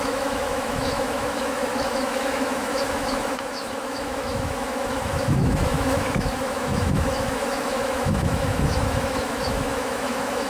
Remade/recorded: remade